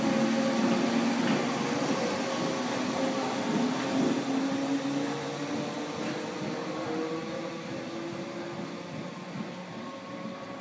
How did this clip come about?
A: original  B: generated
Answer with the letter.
A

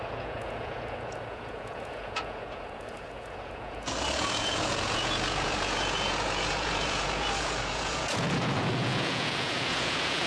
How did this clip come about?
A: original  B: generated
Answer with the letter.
B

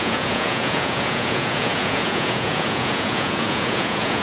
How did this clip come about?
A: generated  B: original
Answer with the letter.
A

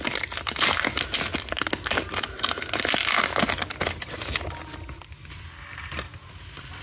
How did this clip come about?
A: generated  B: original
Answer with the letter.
B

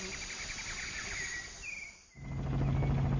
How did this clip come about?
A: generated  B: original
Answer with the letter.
B